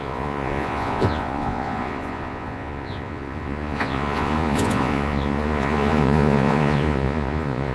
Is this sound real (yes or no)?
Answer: no